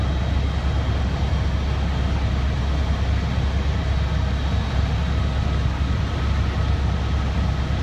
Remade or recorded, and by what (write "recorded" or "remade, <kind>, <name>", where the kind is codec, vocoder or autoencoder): recorded